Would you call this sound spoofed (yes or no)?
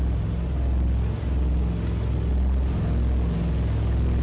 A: no